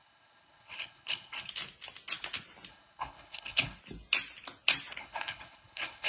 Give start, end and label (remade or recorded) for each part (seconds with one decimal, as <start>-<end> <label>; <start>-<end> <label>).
0.0-1.5 remade; 1.5-2.7 recorded; 2.7-3.8 remade; 3.8-5.0 recorded; 5.0-6.1 remade